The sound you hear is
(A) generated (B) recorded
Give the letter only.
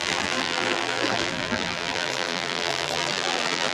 A